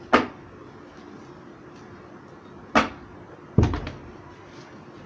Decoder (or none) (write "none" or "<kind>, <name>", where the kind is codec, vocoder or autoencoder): none